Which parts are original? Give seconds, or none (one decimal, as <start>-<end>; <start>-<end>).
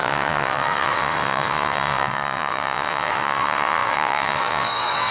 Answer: none